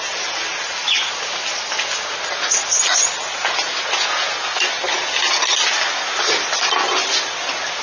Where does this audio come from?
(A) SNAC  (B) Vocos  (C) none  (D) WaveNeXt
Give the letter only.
C